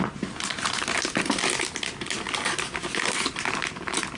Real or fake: real